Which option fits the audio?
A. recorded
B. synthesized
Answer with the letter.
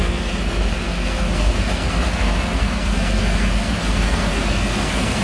B